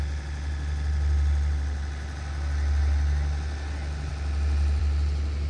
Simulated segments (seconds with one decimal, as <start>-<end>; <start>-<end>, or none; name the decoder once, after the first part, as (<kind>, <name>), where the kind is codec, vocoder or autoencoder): none